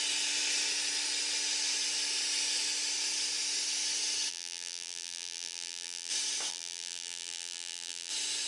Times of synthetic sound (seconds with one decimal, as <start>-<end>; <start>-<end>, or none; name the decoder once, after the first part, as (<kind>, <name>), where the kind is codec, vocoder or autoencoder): 4.3-6.1 (vocoder, BigVGAN v2); 6.5-8.1